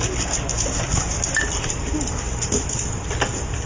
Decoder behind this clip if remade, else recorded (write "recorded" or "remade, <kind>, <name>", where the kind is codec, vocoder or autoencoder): recorded